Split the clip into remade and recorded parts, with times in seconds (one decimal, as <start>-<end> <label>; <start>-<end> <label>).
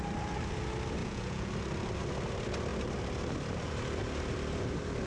0.0-1.0 recorded; 1.0-1.5 remade; 1.5-5.1 recorded